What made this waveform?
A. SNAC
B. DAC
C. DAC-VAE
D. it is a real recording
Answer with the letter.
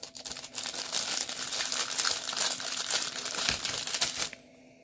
D